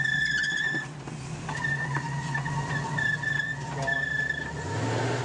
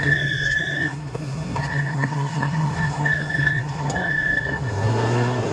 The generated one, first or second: second